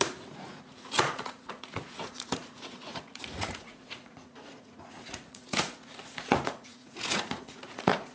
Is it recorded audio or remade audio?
remade